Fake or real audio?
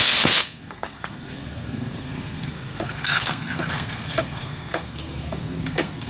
fake